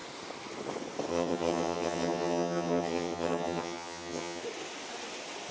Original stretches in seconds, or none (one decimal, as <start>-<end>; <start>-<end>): 0.0-1.1; 4.4-5.5